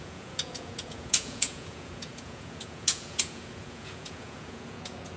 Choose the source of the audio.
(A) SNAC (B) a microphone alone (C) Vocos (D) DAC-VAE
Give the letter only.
C